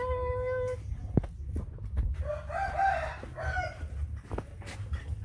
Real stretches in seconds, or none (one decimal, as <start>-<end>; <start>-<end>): 0.0-5.2